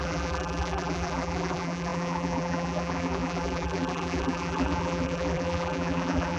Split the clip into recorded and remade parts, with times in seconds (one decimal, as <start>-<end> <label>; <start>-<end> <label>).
0.0-6.4 remade